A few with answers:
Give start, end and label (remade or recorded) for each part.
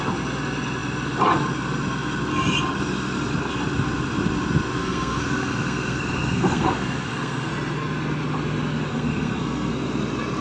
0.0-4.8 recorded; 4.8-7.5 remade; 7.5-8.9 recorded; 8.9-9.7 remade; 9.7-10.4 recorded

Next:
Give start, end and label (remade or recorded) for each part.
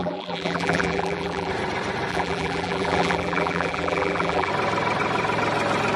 0.0-1.5 remade; 1.5-2.1 recorded; 2.1-4.5 remade; 4.5-6.0 recorded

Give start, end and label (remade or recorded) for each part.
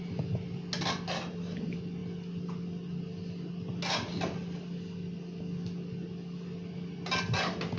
0.0-7.8 recorded